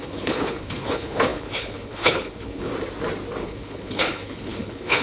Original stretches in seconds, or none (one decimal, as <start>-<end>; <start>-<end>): 2.7-3.4